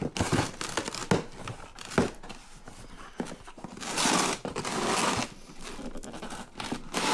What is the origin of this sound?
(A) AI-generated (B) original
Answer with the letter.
B